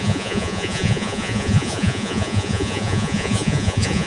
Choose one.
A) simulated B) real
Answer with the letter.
A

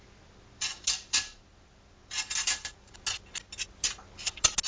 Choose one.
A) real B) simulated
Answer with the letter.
A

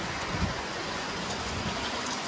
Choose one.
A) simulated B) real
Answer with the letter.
A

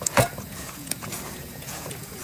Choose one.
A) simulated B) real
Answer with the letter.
A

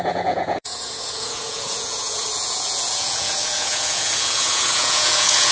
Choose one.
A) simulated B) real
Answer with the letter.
A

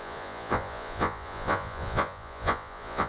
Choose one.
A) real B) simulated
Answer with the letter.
B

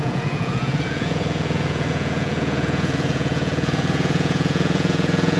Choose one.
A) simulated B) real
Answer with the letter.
A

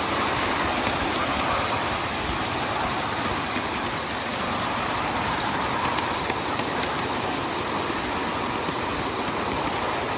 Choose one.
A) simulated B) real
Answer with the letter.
B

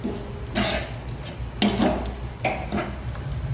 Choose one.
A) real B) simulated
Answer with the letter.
A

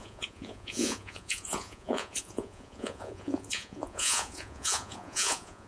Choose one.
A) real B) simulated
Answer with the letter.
B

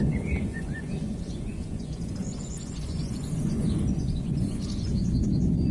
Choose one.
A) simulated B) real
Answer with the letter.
A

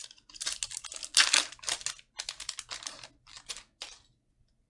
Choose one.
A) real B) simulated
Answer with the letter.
A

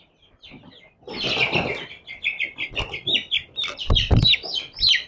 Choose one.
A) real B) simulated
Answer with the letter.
A